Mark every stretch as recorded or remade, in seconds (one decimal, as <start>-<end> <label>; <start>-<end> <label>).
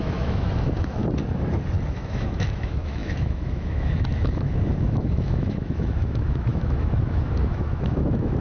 0.0-1.0 remade; 1.0-1.9 recorded; 1.9-8.4 remade